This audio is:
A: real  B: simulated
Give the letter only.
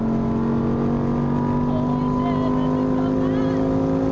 A